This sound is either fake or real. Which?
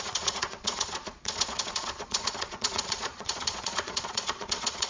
fake